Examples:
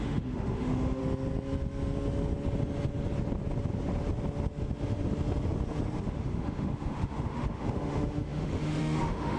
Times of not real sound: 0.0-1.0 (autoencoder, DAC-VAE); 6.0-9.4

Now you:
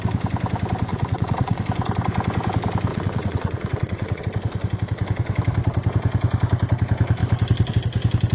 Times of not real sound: 0.9-1.6 (vocoder, WaveNeXt); 2.9-4.2

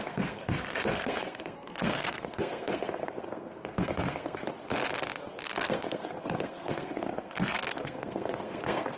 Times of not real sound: 0.0-4.4 (codec, SNAC); 5.4-9.0

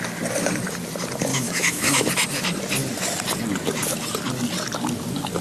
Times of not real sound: 1.3-2.1 (autoencoder, DAC-VAE)

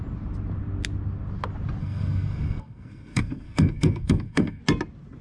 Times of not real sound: 1.8-4.6 (codec, SNAC)